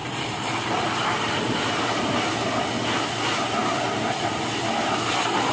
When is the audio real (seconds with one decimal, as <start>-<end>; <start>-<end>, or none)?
2.0-3.6; 4.2-5.5